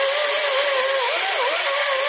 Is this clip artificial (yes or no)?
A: no